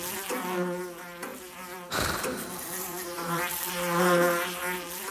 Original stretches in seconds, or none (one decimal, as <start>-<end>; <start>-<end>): 0.0-1.3; 3.7-5.1

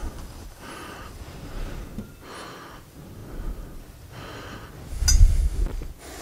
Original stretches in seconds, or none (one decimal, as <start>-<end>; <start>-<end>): 1.6-6.2

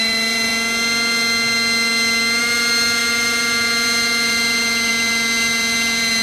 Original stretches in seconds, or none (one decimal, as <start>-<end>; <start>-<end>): 0.5-2.4